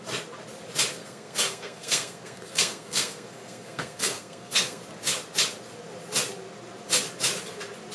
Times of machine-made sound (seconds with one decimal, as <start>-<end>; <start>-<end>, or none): 0.9-4.8